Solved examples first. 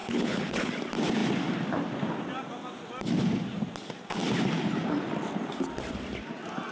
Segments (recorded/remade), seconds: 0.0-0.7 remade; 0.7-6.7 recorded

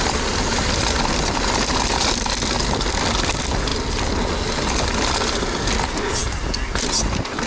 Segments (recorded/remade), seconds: 0.0-7.5 recorded

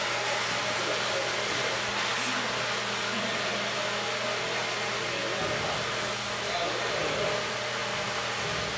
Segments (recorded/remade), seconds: 0.0-8.8 recorded

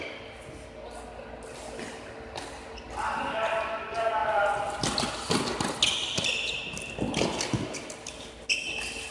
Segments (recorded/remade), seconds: 0.0-9.1 recorded

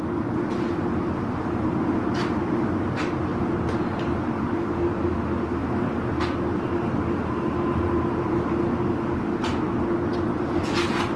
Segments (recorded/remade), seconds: 0.0-11.2 recorded